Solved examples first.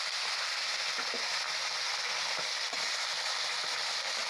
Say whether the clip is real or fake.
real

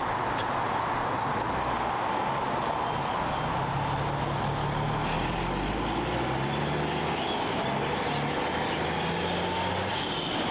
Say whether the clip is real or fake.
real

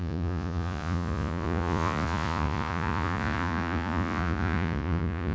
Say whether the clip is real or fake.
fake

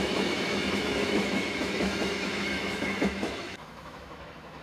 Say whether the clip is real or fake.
fake